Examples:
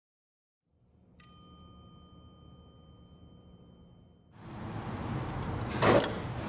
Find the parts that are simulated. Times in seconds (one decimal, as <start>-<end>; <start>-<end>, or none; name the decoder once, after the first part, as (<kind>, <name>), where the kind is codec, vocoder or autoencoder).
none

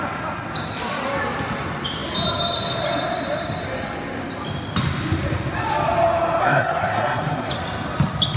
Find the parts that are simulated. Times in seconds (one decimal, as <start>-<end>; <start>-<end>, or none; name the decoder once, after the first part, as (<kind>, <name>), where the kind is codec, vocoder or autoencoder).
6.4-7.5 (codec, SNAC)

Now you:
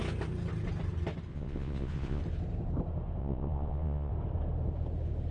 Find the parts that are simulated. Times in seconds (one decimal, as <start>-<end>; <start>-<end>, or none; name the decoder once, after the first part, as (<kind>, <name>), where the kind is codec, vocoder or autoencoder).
1.3-2.2 (vocoder, Vocos); 3.2-4.1

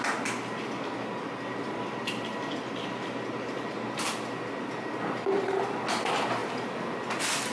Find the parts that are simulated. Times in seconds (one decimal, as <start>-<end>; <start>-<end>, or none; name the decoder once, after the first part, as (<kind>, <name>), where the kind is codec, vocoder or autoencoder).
none